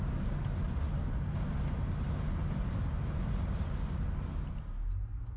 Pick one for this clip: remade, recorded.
recorded